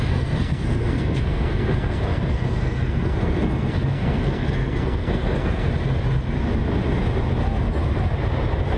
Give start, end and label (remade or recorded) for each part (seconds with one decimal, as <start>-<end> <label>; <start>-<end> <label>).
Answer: 0.0-5.7 remade; 5.7-8.8 recorded